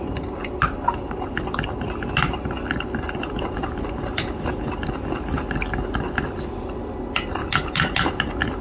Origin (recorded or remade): recorded